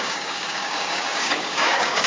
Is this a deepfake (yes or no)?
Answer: yes